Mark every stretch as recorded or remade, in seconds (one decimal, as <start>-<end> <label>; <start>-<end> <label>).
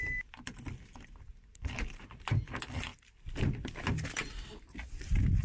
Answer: 0.0-2.9 remade; 2.9-3.9 recorded; 3.9-5.4 remade